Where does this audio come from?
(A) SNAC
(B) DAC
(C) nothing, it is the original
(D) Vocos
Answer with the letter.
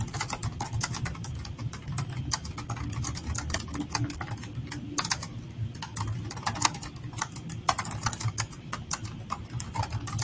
C